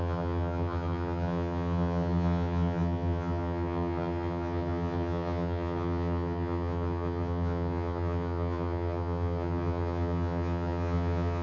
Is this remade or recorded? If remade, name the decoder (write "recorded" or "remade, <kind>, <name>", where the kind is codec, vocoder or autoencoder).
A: remade, vocoder, HiFi-GAN